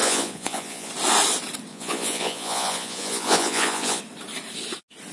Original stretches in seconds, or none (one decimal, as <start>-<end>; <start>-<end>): 0.9-1.7; 4.0-5.1